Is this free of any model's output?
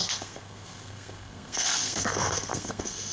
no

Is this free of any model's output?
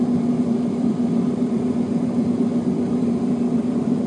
no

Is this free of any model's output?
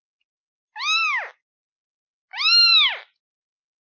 yes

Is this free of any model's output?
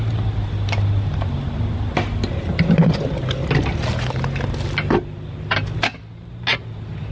yes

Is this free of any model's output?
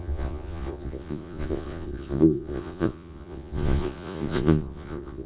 no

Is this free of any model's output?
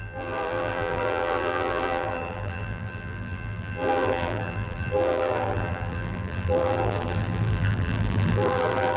no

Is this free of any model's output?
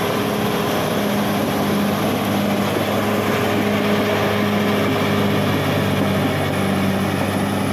yes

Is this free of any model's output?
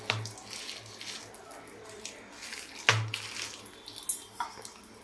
yes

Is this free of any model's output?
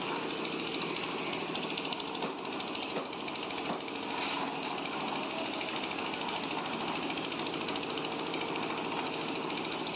yes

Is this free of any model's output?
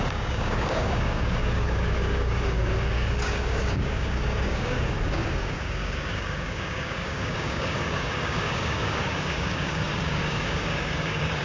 no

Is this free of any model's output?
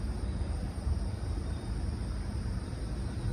no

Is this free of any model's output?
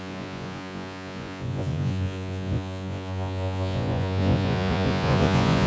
no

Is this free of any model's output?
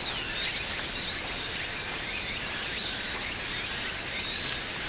yes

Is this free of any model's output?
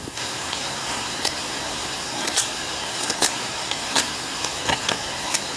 no